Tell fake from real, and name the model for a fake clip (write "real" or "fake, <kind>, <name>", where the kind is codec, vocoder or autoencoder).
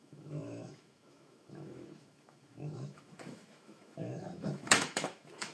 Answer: fake, autoencoder, DAC-VAE